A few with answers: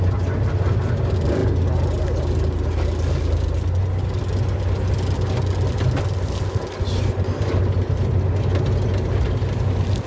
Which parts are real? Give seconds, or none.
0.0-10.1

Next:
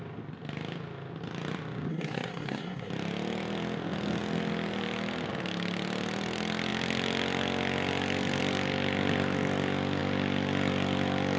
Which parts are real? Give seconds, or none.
0.0-1.9; 2.9-11.4

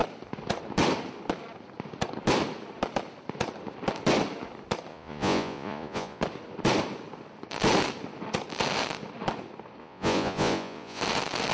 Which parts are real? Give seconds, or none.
0.0-4.9; 6.2-9.8; 11.0-11.5

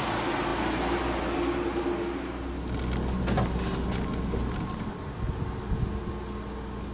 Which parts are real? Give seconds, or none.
0.0-6.9

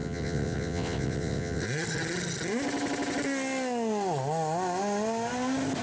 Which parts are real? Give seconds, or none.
1.6-5.8